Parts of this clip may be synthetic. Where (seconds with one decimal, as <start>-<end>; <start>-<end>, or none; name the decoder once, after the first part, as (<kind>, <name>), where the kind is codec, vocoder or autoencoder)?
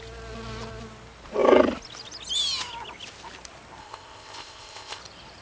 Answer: 3.8-5.0 (codec, ZipCodec)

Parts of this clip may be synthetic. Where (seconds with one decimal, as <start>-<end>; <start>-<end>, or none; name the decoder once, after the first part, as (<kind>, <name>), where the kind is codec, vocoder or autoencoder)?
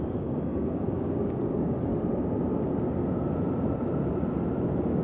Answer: 0.0-1.9 (codec, DAC)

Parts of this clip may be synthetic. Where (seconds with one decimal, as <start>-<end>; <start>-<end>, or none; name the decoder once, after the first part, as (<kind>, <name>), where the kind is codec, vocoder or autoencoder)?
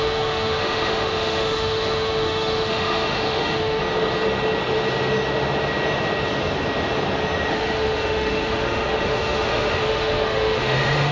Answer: 0.0-3.8 (autoencoder, DAC-VAE); 7.5-11.1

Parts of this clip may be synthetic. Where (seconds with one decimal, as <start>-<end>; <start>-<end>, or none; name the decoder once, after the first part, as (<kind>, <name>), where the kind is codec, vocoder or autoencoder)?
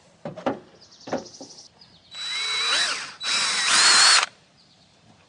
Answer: 0.0-0.7 (vocoder, BigVGAN v2); 3.2-5.3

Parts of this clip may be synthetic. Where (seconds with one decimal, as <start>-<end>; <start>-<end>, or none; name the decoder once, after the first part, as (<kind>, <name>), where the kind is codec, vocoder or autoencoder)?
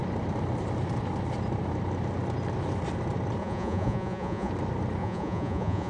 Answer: 3.4-4.5 (vocoder, Vocos); 5.0-5.9